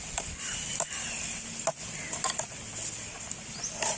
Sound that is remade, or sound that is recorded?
recorded